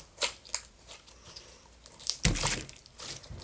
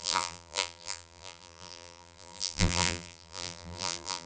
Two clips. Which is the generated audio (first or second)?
second